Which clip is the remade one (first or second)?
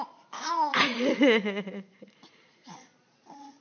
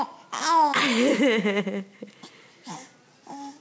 first